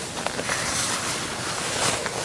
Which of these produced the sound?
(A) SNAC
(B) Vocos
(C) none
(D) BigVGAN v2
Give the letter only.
C